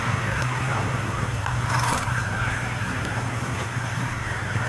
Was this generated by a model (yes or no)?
yes